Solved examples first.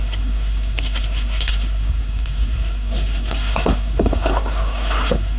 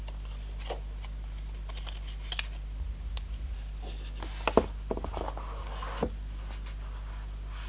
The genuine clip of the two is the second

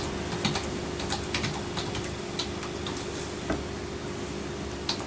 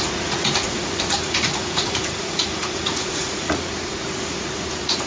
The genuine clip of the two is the first